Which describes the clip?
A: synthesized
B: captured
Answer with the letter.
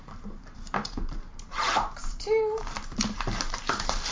A